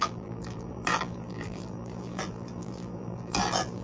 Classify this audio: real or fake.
fake